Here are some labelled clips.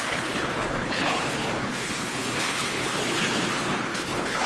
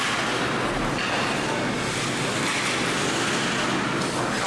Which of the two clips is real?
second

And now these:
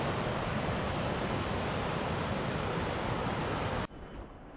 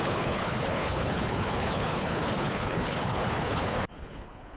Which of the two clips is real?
first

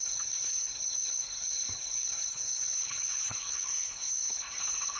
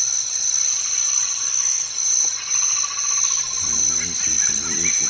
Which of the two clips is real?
second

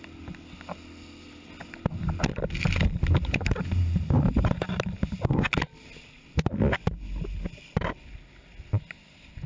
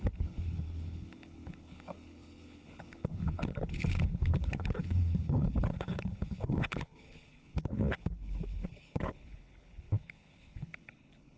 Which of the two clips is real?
first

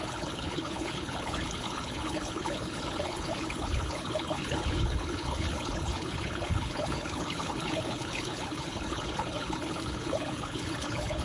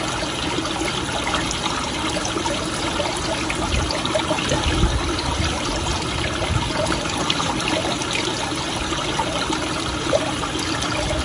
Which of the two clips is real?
second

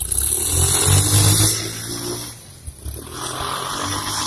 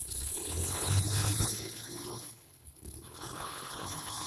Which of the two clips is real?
first